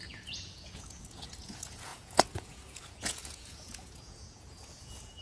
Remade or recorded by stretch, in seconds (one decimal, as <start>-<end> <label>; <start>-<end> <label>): 0.0-5.2 remade